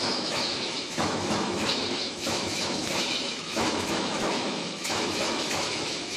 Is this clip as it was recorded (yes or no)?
no